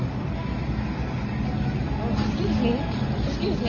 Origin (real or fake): real